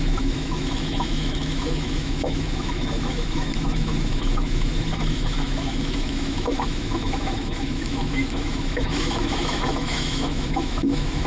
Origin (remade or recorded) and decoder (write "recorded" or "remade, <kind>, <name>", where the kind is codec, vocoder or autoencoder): remade, autoencoder, DAC-VAE